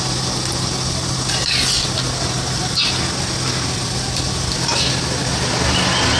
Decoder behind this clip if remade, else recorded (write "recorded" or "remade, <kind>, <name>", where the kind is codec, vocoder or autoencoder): recorded